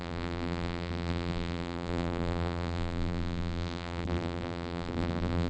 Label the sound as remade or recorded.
remade